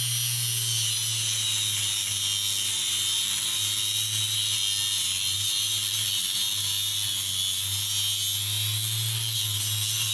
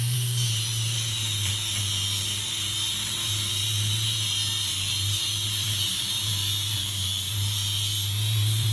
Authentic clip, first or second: first